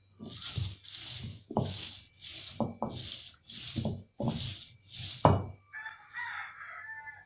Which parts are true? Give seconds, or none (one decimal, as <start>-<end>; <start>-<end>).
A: 0.0-1.3; 1.9-7.3